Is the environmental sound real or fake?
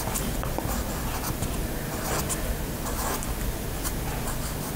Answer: real